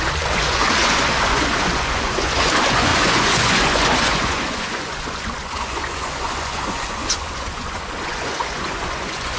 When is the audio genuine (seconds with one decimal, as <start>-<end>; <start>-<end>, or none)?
none